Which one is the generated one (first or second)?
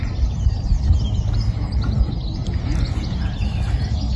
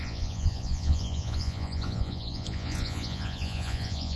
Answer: second